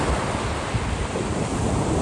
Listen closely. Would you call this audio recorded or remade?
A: recorded